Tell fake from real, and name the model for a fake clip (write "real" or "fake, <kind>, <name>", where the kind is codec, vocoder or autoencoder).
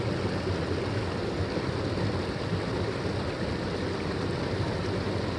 real